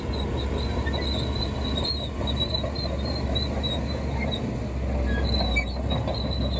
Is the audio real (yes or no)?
yes